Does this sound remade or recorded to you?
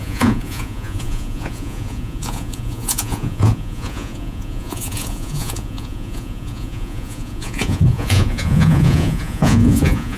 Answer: remade